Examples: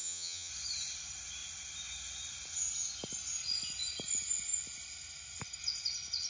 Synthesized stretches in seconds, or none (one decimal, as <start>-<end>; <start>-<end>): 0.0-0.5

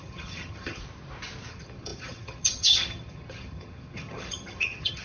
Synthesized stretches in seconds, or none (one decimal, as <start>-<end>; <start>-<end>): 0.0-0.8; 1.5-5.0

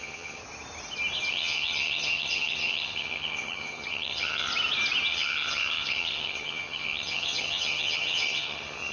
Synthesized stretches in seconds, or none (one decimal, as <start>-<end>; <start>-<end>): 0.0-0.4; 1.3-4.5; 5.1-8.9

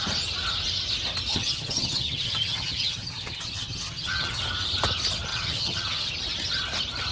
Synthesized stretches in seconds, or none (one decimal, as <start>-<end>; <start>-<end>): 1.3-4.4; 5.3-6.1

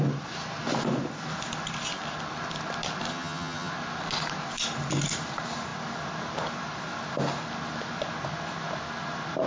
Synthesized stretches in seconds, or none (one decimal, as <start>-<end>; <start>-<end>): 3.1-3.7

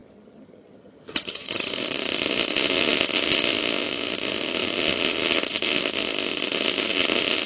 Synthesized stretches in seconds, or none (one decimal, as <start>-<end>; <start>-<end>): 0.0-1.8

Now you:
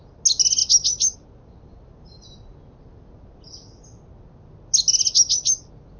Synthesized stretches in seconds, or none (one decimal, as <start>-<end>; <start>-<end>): none

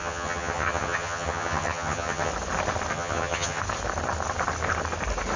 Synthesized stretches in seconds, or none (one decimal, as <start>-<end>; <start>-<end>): 0.0-2.3; 2.9-3.6